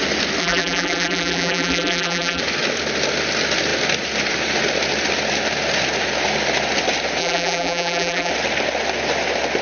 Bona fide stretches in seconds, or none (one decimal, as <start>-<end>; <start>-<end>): 0.0-0.4; 2.4-7.2; 8.3-9.6